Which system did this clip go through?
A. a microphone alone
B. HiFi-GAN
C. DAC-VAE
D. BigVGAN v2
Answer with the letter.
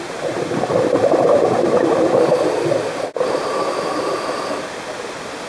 A